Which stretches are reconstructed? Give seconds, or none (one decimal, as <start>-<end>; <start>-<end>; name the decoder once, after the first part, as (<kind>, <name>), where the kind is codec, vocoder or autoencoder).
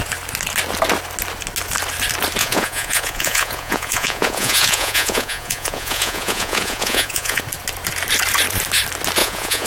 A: 2.4-7.4 (vocoder, Vocos); 9.2-9.7